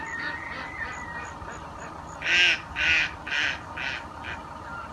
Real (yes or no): yes